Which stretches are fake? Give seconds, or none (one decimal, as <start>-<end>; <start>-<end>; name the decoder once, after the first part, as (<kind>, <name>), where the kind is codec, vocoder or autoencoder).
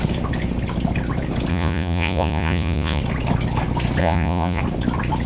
1.5-3.0 (vocoder, Vocos); 4.0-4.6